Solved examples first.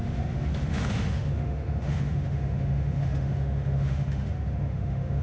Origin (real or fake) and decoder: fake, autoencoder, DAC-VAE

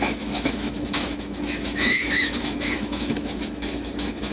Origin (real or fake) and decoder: fake, autoencoder, DAC-VAE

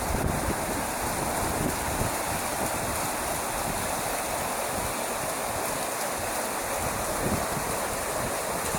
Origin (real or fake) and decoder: real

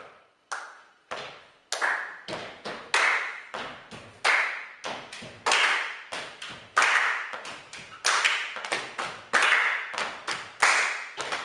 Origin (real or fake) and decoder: real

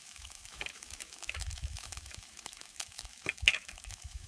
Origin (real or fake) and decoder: fake, autoencoder, DAC-VAE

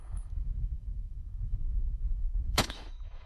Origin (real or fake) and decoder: fake, autoencoder, DAC-VAE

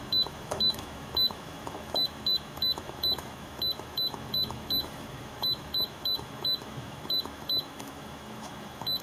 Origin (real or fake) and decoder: fake, autoencoder, DAC-VAE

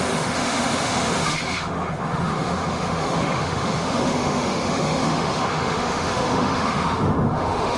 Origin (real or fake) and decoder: fake, autoencoder, DAC-VAE